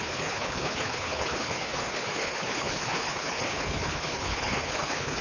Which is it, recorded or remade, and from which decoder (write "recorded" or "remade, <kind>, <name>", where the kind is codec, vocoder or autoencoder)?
remade, codec, HILCodec